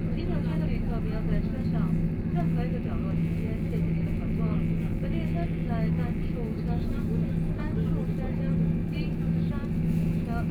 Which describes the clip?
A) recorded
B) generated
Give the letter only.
A